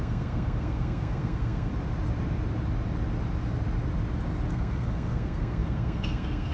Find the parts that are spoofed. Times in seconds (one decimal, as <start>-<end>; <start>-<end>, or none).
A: 0.0-1.7; 4.5-6.5